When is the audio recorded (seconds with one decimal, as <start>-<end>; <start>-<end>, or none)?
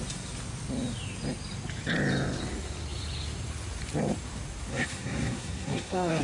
0.0-4.7